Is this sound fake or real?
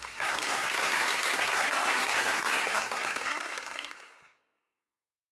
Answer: fake